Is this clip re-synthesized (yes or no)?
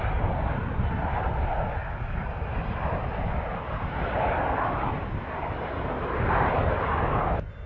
no